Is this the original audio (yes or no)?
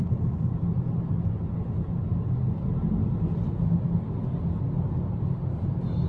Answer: yes